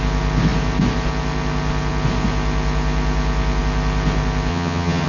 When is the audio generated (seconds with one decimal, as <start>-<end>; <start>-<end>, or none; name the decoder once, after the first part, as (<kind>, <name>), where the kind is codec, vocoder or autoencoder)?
4.5-5.1 (vocoder, HiFi-GAN)